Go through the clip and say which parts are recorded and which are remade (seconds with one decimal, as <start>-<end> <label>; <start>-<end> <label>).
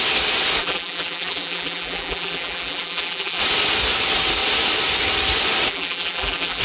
0.0-0.6 recorded; 0.6-3.4 remade; 3.4-5.7 recorded; 5.7-6.6 remade